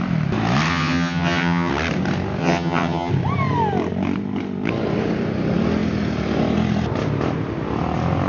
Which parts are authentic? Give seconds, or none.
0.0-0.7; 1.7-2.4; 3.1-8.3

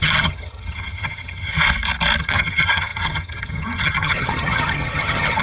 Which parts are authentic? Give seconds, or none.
1.5-2.2

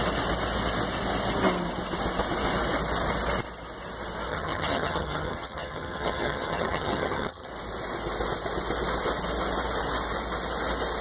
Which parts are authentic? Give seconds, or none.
0.0-4.3; 7.5-11.0

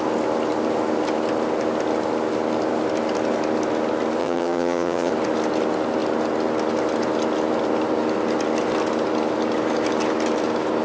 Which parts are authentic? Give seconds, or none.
0.0-4.2; 5.1-10.8